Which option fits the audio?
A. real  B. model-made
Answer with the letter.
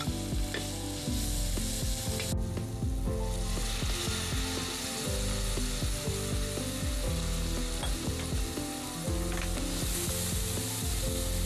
A